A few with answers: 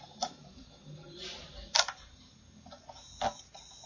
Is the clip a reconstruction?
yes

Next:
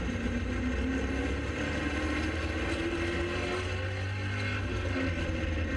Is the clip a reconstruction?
no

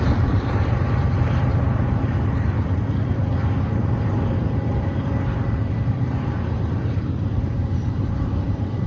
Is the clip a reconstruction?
yes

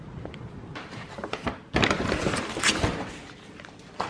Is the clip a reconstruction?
yes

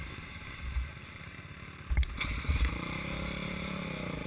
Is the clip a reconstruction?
yes